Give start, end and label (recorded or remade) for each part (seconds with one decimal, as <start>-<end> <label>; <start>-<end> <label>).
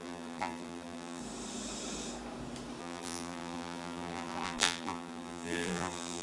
0.0-1.2 remade; 1.2-2.8 recorded; 2.8-6.2 remade